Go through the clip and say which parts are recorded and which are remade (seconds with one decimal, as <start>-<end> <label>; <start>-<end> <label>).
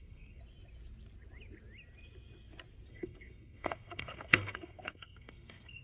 0.0-0.4 remade; 0.4-2.9 recorded; 2.9-5.8 remade